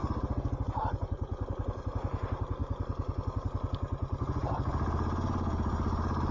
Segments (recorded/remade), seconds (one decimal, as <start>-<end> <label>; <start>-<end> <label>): 0.0-6.3 recorded

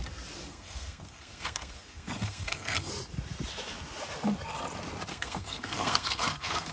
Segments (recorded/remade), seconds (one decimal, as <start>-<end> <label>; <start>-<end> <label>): 0.0-0.5 recorded; 0.5-2.9 remade; 2.9-5.1 recorded; 5.1-6.7 remade

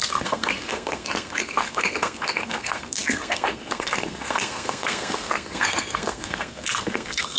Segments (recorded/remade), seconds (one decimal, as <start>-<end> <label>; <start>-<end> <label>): 0.0-7.4 remade

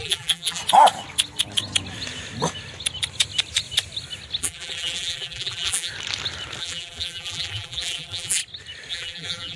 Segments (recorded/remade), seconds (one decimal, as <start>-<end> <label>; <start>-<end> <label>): 0.0-0.6 remade; 0.6-4.4 recorded; 4.4-5.9 remade; 5.9-6.6 recorded; 6.6-8.4 remade; 8.4-8.9 recorded; 8.9-9.6 remade

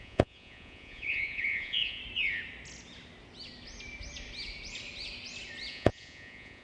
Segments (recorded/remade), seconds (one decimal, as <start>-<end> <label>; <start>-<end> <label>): 0.0-2.0 remade; 2.0-5.7 recorded; 5.7-6.6 remade

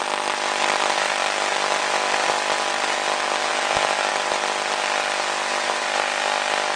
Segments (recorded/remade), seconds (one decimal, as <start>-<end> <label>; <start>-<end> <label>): 0.0-3.5 recorded; 3.5-4.1 remade; 4.1-6.8 recorded

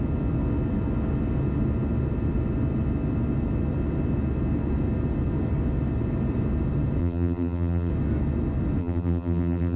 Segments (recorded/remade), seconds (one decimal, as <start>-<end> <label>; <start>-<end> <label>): 0.0-7.0 recorded; 7.0-7.9 remade; 7.9-8.8 recorded; 8.8-9.8 remade

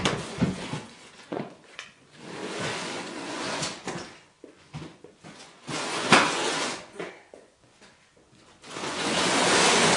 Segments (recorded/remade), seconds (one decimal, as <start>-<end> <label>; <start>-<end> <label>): 0.0-10.0 remade